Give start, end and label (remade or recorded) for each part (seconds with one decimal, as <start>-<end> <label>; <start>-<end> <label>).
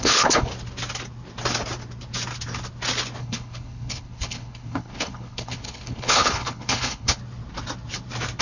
0.0-0.5 remade; 0.5-3.2 recorded; 3.2-7.2 remade; 7.2-8.4 recorded